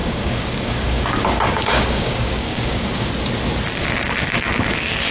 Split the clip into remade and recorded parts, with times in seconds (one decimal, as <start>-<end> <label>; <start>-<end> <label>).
0.0-3.1 remade; 3.1-5.1 recorded